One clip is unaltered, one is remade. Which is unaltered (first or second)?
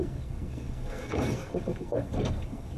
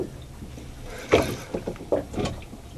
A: second